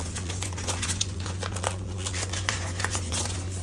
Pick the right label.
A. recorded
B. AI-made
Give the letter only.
B